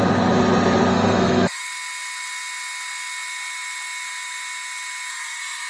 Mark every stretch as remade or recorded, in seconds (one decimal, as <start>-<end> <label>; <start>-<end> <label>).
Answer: 0.0-0.9 recorded; 0.9-1.6 remade; 1.6-5.1 recorded; 5.1-5.7 remade